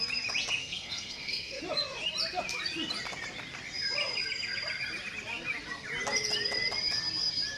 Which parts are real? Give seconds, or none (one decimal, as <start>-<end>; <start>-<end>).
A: 0.0-0.6; 1.6-7.6